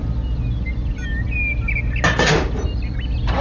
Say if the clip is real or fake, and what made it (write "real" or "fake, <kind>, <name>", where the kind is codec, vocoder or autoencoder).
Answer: real